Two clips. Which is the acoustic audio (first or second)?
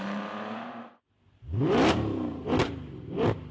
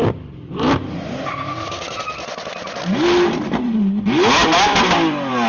first